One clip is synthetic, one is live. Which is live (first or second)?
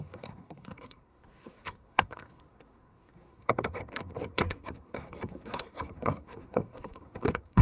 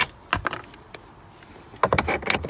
second